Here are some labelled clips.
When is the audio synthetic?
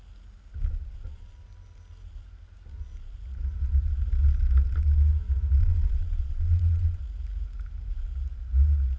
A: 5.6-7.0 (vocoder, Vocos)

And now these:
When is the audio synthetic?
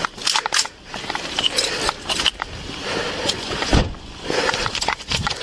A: 3.2-5.4 (vocoder, Vocos)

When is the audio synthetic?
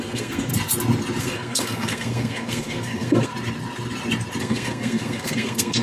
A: 0.0-0.5 (codec, SNAC); 1.2-3.3; 4.4-5.8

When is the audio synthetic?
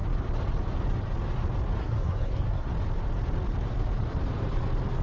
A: 1.8-2.7 (codec, SNAC)